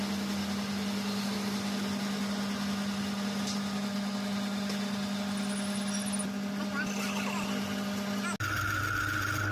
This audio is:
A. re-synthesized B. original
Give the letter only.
B